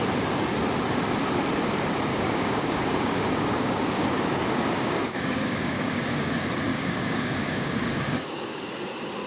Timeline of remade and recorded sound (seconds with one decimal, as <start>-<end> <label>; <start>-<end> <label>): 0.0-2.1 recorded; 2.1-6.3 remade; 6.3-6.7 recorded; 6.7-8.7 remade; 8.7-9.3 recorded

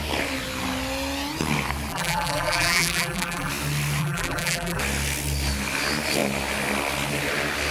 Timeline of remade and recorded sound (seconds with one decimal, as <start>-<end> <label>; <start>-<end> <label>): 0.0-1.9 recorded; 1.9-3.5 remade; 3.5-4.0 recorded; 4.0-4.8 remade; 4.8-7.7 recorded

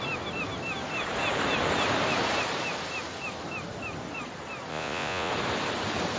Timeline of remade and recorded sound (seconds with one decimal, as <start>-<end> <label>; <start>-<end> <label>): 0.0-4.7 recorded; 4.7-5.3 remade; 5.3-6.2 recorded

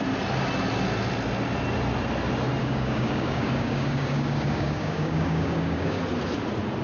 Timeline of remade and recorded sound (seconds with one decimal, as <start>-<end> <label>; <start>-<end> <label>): 0.0-2.6 recorded; 2.6-6.0 remade; 6.0-6.8 recorded

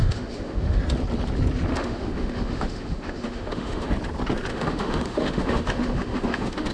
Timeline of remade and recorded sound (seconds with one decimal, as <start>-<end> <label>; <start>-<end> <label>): 0.0-0.8 remade; 0.8-1.7 recorded; 1.7-3.9 remade; 3.9-4.5 recorded; 4.5-6.7 remade

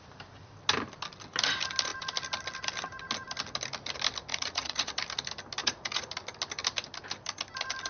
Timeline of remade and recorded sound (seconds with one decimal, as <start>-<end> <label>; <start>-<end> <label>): 0.0-4.3 recorded; 4.3-4.9 remade; 4.9-5.6 recorded; 5.6-6.1 remade; 6.1-7.9 recorded